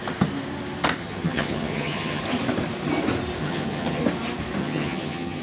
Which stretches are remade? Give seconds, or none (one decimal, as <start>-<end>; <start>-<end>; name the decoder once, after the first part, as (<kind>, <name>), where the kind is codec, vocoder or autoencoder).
1.0-2.2 (vocoder, HiFi-GAN); 3.4-4.0; 4.6-5.4